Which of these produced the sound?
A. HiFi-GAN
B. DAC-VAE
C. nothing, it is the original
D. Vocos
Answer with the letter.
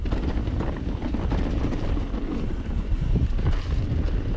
C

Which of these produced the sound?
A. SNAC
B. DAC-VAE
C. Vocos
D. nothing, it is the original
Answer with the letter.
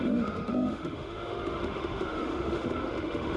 B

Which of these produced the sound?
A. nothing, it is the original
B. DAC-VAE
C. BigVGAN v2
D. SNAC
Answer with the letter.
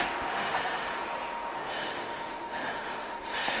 B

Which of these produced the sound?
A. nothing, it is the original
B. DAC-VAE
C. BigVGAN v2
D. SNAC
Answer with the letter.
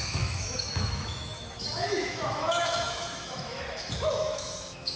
B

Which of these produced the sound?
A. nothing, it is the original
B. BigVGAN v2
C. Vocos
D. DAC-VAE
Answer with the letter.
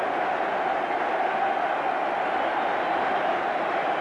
A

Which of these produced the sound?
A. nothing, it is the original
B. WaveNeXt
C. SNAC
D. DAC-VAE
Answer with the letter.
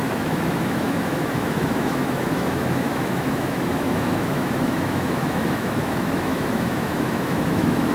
D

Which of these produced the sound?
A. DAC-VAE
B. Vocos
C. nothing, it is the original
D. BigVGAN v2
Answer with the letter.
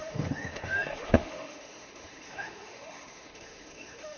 A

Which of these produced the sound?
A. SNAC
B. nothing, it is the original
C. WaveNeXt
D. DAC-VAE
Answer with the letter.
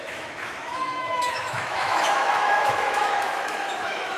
D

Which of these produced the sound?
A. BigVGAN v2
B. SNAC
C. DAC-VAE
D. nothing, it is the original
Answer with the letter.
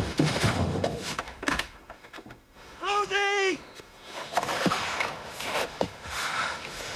C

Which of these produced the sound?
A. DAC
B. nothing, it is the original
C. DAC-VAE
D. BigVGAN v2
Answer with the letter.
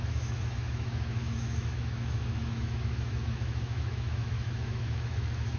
C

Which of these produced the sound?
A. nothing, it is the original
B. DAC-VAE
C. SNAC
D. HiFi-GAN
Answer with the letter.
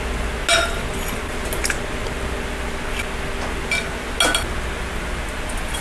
A